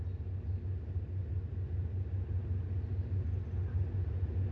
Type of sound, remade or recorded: recorded